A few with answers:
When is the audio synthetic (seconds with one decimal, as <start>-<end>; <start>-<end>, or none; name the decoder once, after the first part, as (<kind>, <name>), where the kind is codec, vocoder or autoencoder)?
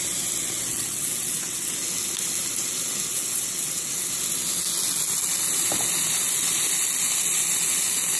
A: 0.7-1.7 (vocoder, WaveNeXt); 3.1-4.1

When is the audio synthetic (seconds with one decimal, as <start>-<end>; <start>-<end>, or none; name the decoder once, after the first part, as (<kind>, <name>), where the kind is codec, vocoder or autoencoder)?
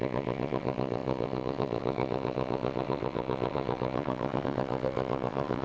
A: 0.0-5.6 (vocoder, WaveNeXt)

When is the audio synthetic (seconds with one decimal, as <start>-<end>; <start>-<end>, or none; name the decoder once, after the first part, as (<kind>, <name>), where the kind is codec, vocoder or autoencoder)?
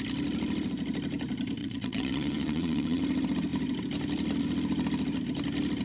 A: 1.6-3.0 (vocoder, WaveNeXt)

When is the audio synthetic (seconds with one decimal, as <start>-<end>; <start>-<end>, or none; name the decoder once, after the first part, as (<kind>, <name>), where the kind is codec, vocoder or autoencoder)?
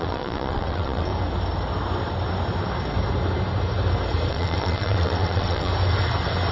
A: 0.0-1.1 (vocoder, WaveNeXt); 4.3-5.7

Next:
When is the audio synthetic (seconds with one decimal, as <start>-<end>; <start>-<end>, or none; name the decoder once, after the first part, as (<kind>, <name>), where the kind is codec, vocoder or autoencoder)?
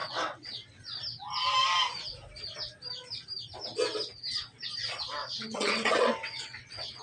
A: 0.0-0.8 (vocoder, WaveNeXt); 5.2-7.0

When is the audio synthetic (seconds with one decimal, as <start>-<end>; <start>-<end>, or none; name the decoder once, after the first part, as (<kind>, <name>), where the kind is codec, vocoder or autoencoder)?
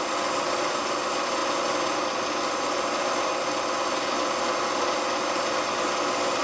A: none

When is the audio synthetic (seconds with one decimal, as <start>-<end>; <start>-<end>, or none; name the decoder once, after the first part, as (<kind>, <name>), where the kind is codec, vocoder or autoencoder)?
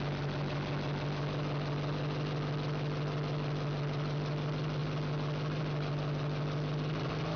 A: none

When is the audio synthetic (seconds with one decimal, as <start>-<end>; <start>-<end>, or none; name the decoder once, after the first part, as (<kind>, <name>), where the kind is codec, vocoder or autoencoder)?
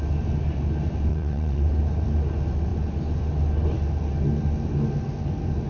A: 1.1-1.7 (vocoder, WaveNeXt)